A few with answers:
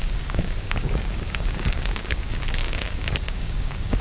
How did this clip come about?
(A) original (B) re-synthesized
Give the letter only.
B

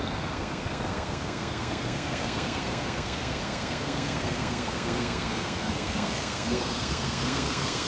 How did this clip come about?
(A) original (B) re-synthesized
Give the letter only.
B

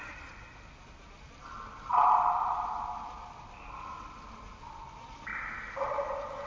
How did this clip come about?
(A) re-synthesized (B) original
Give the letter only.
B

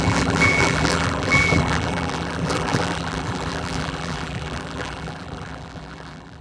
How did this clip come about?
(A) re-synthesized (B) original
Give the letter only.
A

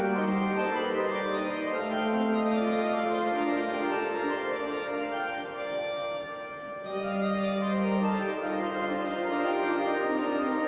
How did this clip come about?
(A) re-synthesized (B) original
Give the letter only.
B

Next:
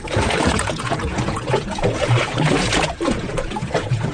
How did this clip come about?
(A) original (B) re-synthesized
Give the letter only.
B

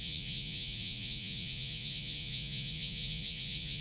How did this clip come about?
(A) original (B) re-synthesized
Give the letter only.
B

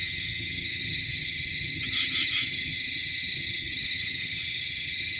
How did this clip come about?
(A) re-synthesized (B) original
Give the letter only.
A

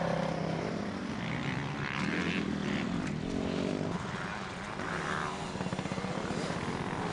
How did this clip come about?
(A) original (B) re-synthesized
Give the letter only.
A